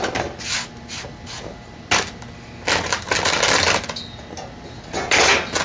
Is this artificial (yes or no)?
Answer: no